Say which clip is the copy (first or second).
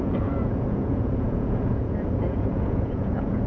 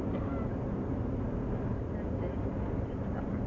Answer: first